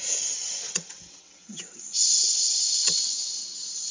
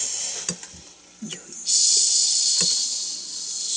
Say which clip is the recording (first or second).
second